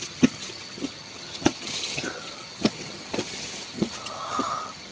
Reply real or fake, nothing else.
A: fake